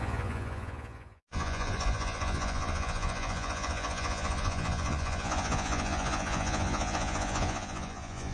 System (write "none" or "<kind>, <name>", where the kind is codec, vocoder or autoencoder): vocoder, Vocos